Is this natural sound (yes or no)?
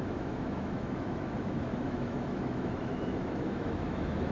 no